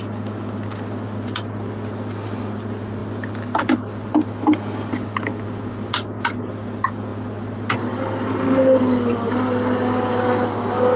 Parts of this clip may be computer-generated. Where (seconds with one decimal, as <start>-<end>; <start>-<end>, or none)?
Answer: none